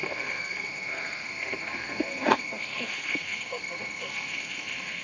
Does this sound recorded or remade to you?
remade